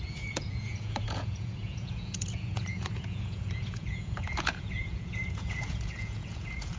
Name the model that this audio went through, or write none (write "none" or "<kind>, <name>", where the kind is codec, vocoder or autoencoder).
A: vocoder, Vocos